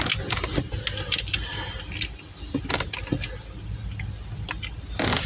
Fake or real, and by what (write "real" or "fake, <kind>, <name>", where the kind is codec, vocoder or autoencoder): real